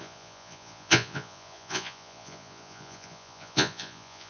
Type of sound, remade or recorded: remade